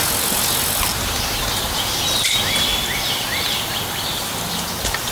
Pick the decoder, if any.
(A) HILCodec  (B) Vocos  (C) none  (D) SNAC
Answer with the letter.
C